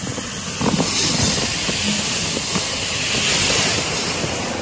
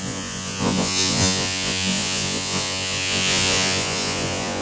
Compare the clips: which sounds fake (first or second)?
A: second